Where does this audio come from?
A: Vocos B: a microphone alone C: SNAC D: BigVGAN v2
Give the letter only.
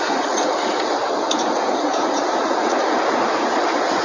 A